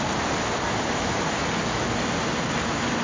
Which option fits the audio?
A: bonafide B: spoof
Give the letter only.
A